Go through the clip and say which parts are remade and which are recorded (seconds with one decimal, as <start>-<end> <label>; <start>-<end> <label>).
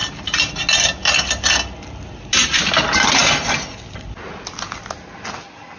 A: 0.0-0.5 remade; 0.5-5.8 recorded